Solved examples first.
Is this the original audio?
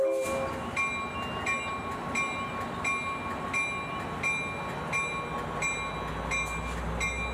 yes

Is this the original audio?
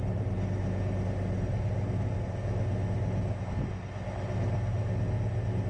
yes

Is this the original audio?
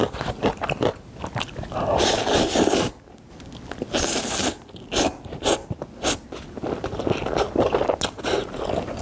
yes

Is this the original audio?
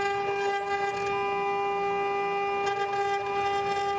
yes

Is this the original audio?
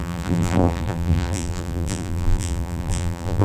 no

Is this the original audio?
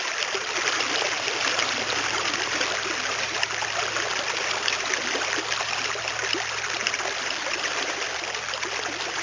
no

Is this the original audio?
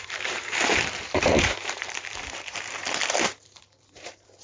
no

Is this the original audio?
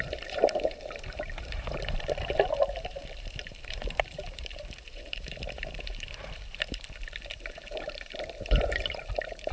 no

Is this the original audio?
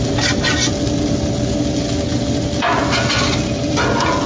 yes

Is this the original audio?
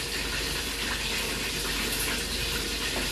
yes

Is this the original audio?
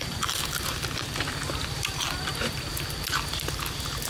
yes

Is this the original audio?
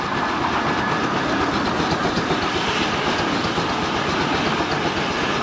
yes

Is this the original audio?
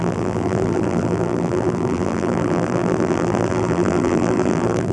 no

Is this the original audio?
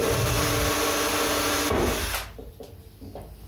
yes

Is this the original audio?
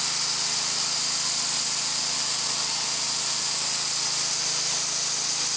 yes